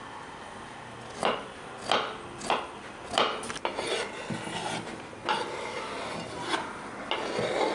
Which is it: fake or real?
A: real